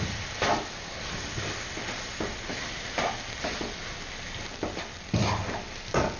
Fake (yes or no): no